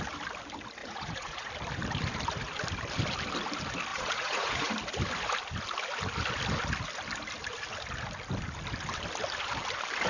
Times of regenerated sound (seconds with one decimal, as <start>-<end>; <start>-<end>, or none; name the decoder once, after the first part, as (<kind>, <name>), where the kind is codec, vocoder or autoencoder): 0.8-1.5 (vocoder, Vocos); 3.9-4.7